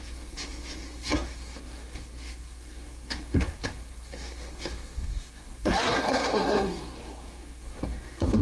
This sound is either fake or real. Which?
fake